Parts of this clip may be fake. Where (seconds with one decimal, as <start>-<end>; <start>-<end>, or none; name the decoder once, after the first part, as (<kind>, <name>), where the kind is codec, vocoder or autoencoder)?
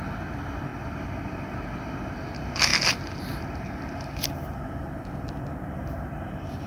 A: none